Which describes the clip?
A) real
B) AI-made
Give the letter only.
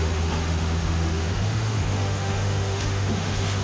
B